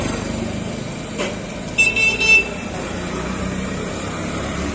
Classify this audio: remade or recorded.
recorded